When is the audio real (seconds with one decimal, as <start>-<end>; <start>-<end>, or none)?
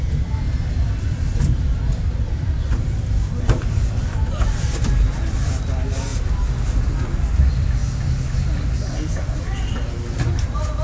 0.0-7.8; 8.4-10.8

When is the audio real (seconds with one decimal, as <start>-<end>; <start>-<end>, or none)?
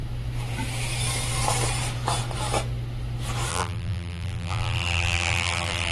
0.0-3.5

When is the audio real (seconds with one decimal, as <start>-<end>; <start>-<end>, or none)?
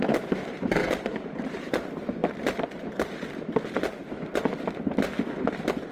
2.2-5.9